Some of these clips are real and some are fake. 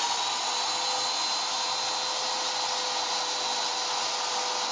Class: real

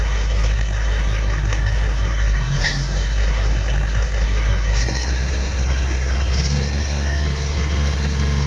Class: fake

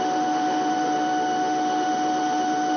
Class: fake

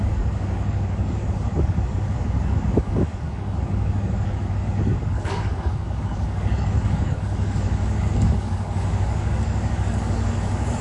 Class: fake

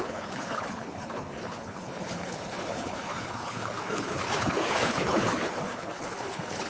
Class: fake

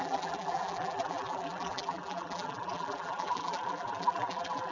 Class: fake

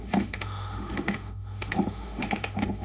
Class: fake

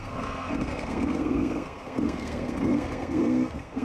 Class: fake